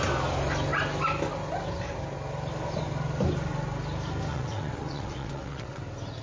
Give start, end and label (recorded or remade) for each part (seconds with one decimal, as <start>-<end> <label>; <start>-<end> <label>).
0.0-4.3 recorded; 4.3-5.8 remade; 5.8-6.2 recorded